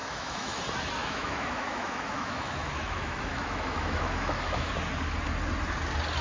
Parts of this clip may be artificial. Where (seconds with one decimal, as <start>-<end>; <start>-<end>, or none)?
0.0-0.6; 1.0-4.7